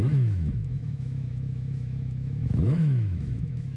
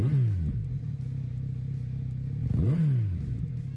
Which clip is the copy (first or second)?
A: first